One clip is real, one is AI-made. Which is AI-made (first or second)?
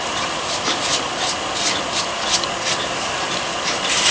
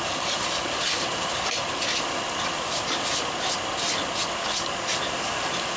first